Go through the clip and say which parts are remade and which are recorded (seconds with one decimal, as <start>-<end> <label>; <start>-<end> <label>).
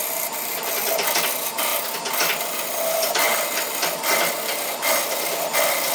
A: 0.0-5.9 recorded